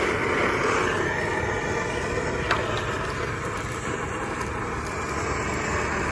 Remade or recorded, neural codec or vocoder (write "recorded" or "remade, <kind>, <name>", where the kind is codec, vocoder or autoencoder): recorded